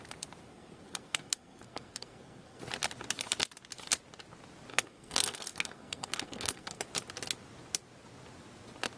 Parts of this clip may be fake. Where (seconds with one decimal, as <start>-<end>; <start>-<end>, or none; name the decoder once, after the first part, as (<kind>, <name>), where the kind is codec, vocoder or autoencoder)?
0.4-2.6 (codec, SNAC); 4.7-6.8